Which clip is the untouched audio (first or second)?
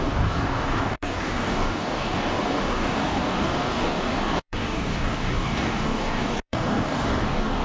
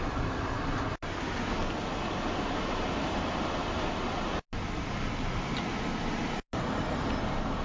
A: second